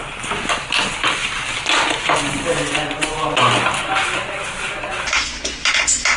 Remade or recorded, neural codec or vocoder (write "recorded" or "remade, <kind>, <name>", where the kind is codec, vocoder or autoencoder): recorded